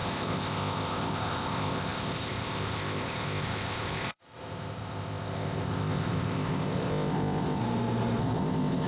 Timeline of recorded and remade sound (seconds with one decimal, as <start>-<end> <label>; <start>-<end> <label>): 0.0-7.6 remade; 7.6-8.2 recorded; 8.2-8.9 remade